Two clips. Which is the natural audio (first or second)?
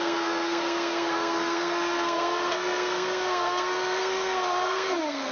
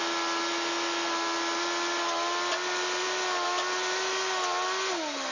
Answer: second